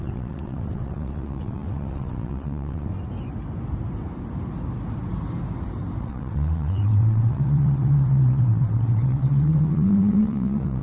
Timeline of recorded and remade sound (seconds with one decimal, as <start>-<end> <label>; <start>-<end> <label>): 0.0-2.9 remade; 2.9-6.0 recorded; 6.0-10.8 remade